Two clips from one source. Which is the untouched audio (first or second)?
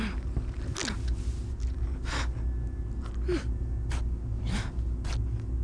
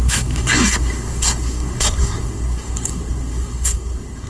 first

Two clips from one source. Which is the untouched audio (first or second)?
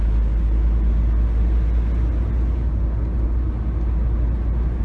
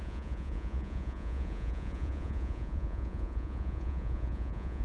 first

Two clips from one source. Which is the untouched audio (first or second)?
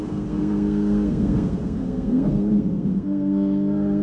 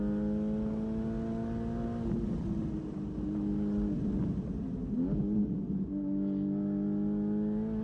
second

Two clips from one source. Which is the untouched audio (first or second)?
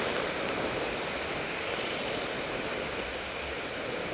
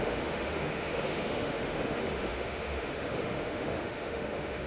first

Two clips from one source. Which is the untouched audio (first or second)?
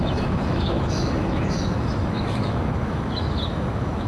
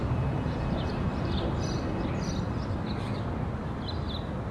second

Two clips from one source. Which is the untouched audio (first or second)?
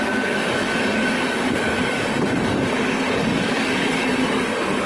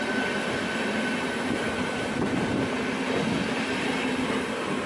second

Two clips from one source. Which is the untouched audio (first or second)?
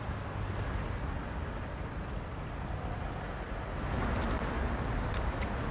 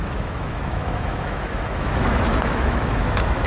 first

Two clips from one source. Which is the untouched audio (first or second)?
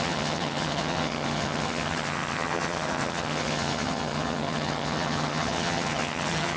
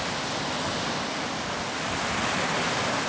second